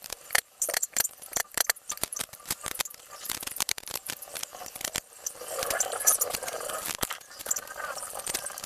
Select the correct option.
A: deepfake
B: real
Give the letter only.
A